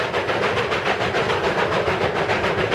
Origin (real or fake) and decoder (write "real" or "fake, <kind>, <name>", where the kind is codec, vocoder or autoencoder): real